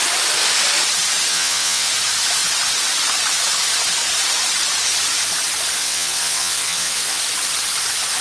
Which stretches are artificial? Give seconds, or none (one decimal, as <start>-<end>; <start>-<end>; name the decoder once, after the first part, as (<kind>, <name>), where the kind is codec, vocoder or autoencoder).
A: 1.3-1.9 (vocoder, WaveNeXt); 5.8-7.2

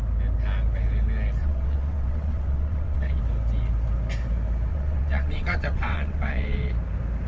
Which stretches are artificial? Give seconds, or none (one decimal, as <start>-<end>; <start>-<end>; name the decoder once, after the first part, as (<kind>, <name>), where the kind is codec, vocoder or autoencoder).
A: 1.4-3.2 (vocoder, WaveNeXt); 4.7-6.7

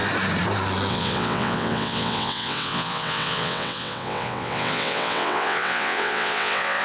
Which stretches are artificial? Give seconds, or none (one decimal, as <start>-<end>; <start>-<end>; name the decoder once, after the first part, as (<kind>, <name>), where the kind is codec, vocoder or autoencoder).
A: 0.9-6.8 (vocoder, WaveNeXt)

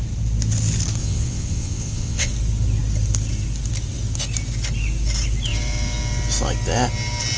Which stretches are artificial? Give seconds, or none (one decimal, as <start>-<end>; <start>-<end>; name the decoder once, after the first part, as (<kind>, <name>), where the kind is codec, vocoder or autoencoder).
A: 1.0-2.3 (vocoder, WaveNeXt)

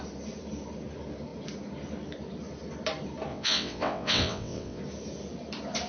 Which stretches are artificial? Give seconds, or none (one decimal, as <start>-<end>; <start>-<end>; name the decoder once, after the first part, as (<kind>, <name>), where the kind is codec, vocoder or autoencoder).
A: 3.3-4.8 (vocoder, WaveNeXt)

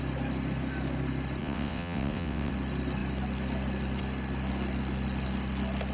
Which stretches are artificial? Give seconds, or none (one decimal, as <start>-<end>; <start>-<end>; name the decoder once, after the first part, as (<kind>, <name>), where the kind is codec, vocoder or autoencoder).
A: 1.4-2.5 (vocoder, WaveNeXt)

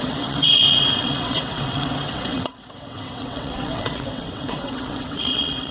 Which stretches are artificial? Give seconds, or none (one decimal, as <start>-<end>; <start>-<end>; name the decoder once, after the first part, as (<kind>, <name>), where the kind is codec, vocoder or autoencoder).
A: 0.0-5.7 (vocoder, WaveNeXt)